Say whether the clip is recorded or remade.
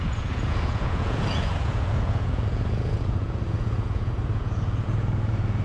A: remade